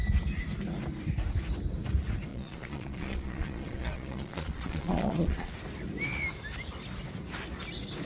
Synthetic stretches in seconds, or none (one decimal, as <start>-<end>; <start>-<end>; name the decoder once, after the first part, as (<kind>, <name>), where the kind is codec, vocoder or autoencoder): 2.3-5.5 (vocoder, Vocos)